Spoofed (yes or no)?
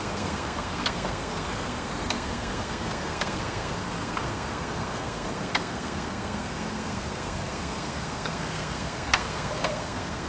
yes